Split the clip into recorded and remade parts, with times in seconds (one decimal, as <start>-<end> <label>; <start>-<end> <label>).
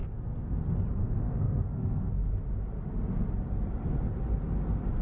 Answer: 0.0-0.6 remade; 0.6-1.0 recorded; 1.0-2.1 remade; 2.1-5.0 recorded